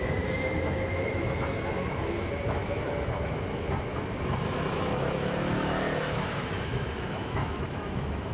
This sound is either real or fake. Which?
fake